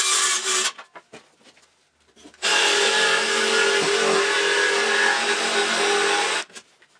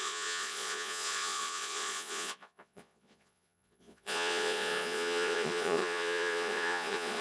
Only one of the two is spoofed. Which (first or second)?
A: second